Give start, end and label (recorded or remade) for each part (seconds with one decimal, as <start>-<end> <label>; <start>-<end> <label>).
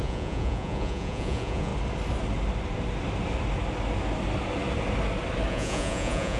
0.0-1.7 remade; 1.7-5.5 recorded; 5.5-6.4 remade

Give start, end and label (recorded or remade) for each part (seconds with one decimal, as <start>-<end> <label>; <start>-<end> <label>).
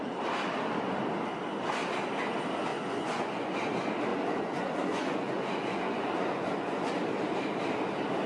0.0-2.7 recorded; 2.7-3.5 remade; 3.5-4.1 recorded; 4.1-6.9 remade; 6.9-8.3 recorded